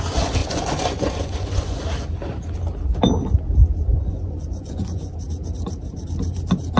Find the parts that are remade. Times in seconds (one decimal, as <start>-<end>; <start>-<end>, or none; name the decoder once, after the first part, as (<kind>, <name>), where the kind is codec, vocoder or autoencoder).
0.4-1.8 (vocoder, Vocos); 3.9-5.1